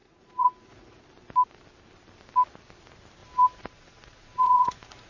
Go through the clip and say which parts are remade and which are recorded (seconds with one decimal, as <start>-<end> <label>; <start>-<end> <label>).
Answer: 0.0-1.0 remade; 1.0-3.2 recorded; 3.2-5.1 remade